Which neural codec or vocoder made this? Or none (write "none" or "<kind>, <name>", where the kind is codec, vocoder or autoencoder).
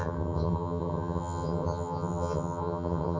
vocoder, HiFi-GAN